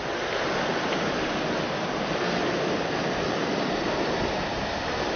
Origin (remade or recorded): recorded